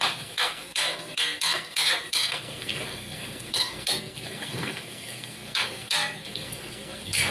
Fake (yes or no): yes